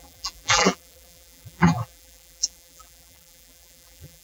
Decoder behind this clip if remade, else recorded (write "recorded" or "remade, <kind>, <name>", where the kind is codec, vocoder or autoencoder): remade, vocoder, BigVGAN v2